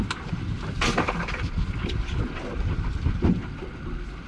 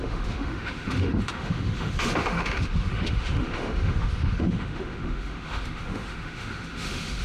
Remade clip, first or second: second